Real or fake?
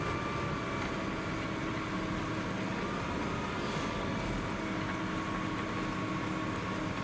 real